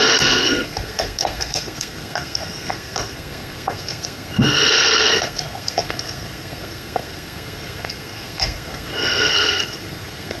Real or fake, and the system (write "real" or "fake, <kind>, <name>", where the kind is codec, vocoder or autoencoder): fake, codec, SNAC